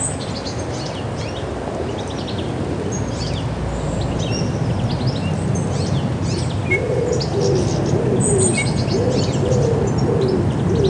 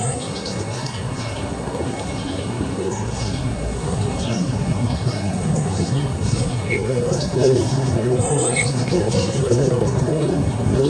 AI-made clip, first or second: second